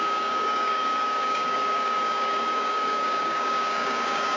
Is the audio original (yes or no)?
no